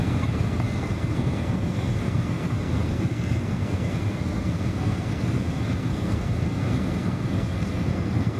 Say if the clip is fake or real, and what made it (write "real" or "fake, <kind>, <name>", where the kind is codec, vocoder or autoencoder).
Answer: fake, codec, SNAC